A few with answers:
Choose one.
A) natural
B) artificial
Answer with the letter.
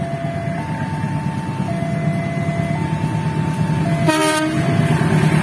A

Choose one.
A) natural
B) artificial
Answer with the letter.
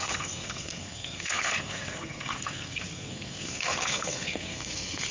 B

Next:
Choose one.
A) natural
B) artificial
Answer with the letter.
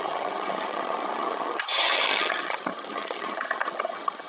B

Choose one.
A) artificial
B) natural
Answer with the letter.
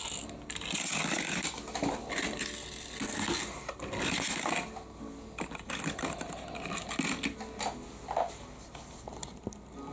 B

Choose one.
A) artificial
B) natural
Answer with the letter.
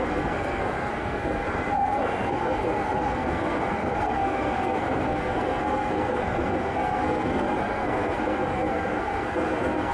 A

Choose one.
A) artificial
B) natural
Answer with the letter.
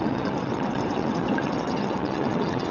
A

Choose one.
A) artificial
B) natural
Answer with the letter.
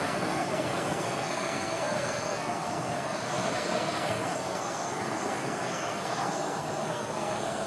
A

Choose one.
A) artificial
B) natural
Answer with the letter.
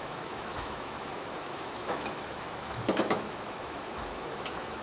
A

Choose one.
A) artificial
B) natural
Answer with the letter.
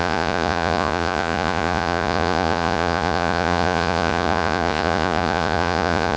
A